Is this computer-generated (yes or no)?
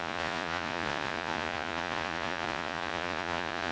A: yes